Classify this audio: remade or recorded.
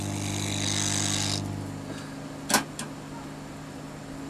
recorded